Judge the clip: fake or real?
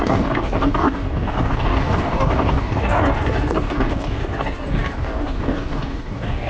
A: fake